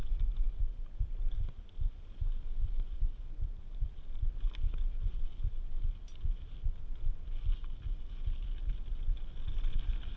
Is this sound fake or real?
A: real